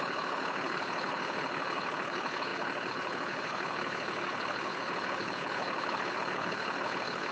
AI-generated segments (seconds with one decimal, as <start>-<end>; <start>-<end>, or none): 0.0-7.3